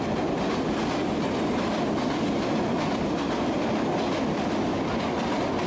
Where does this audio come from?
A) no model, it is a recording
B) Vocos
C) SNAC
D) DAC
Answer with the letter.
A